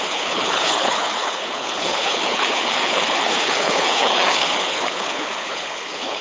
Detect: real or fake fake